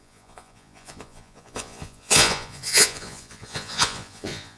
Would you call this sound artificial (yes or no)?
yes